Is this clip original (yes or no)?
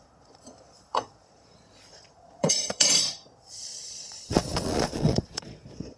no